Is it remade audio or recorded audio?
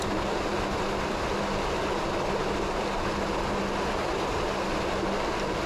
recorded